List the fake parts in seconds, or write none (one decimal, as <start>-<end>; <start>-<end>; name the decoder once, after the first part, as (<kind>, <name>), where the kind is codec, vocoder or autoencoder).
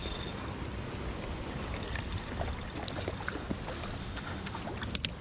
4.0-4.6 (autoencoder, DAC-VAE)